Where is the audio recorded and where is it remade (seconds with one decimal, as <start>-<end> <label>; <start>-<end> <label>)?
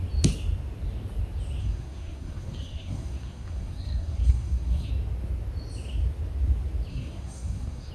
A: 0.0-1.6 recorded; 1.6-4.9 remade; 4.9-6.9 recorded; 6.9-7.9 remade